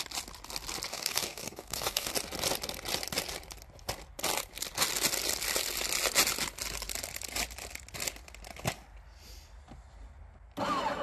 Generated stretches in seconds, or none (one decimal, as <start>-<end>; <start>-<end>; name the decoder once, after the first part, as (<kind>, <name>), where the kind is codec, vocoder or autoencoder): 0.9-2.1 (codec, DAC)